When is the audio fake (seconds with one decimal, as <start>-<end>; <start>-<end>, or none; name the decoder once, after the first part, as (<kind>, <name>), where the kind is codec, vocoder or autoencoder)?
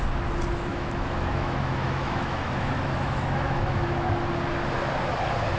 0.7-4.1 (autoencoder, DAC-VAE)